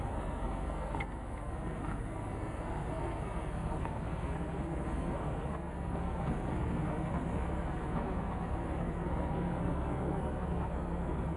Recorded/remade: remade